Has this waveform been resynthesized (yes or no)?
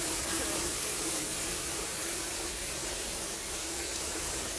yes